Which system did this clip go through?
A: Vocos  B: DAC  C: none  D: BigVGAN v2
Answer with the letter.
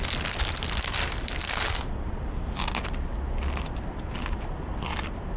C